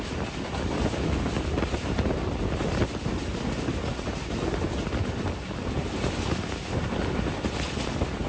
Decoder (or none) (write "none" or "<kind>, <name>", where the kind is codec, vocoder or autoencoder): none